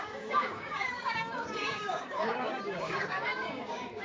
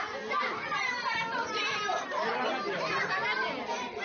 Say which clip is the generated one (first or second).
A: first